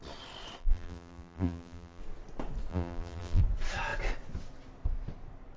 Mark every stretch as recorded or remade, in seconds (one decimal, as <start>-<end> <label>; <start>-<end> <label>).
0.0-0.6 recorded; 0.6-2.0 remade; 2.0-2.7 recorded; 2.7-3.4 remade; 3.4-5.6 recorded